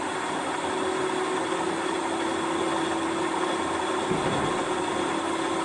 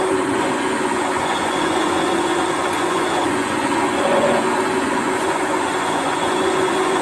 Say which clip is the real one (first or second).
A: first